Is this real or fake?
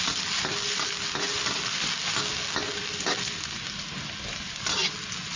real